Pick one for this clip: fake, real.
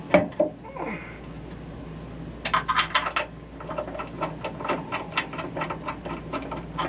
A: real